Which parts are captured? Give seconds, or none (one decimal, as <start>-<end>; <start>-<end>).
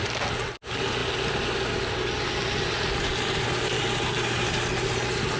0.0-5.4